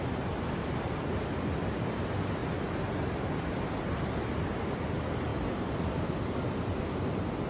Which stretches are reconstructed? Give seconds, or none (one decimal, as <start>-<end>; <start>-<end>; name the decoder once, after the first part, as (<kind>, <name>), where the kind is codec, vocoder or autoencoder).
none